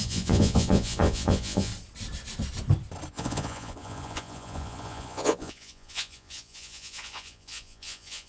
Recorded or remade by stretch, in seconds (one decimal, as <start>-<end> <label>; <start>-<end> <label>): 0.0-1.7 remade; 1.7-3.1 recorded; 3.1-8.3 remade